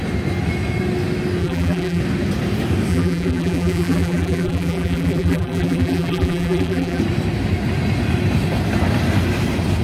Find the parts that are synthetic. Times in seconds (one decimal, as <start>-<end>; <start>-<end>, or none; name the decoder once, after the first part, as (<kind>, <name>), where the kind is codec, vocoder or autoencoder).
1.4-2.0 (vocoder, BigVGAN v2); 2.9-7.0